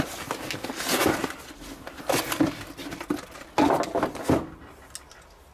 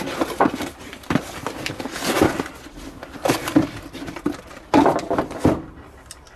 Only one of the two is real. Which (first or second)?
first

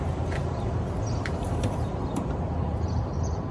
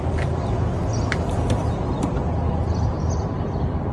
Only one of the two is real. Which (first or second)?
second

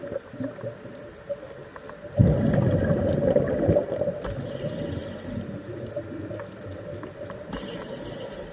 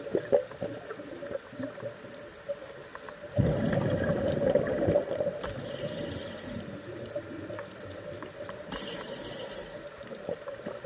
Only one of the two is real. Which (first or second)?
first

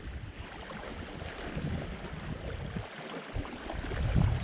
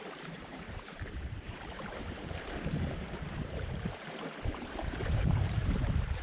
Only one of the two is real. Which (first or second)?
first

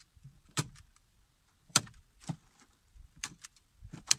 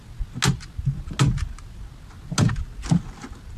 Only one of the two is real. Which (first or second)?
second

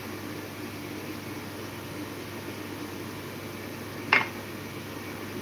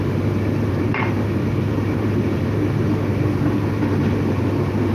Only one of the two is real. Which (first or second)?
first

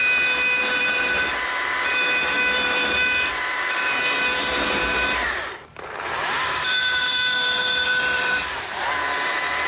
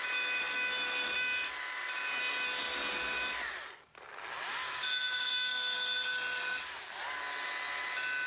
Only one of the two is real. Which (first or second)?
second